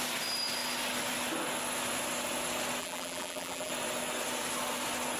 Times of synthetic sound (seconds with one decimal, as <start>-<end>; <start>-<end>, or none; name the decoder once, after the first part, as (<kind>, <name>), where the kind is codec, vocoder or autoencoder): 2.8-3.7 (vocoder, BigVGAN v2)